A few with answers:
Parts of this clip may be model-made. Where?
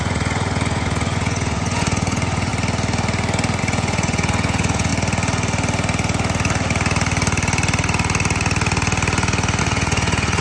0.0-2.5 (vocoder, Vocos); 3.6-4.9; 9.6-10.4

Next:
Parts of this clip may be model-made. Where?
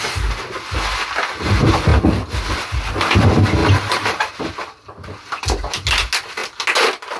3.6-4.4 (vocoder, BigVGAN v2)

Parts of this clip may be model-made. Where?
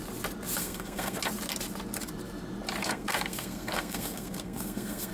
0.6-1.2 (codec, SNAC); 2.8-5.1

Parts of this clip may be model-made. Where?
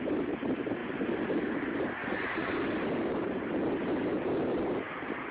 2.0-2.5 (vocoder, Vocos)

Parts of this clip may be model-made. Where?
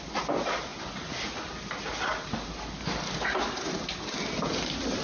none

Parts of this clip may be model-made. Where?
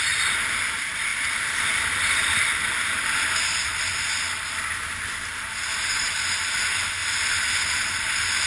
none